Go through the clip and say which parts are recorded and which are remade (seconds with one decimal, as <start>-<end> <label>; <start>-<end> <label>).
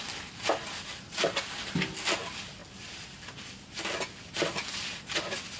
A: 0.0-5.6 recorded